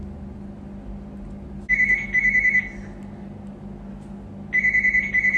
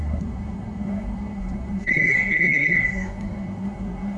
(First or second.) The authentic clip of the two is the first